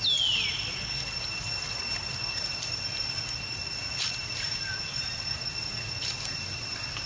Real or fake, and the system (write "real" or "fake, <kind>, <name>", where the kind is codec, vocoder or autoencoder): real